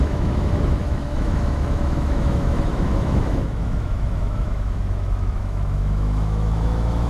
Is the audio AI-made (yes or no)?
yes